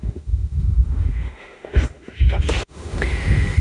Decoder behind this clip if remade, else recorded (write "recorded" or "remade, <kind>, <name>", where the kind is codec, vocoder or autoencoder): remade, autoencoder, DAC-VAE